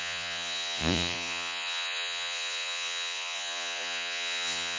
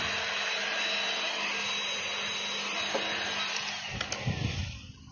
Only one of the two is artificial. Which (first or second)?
first